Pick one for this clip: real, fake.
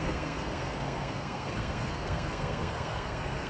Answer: fake